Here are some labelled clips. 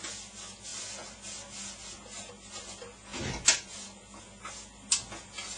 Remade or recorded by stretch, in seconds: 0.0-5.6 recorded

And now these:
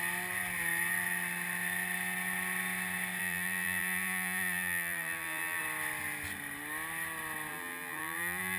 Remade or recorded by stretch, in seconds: 0.0-3.2 recorded; 3.2-5.6 remade; 5.6-7.5 recorded; 7.5-8.6 remade

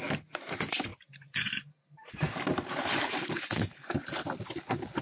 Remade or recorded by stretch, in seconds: 0.0-0.9 recorded; 0.9-3.9 remade; 3.9-5.0 recorded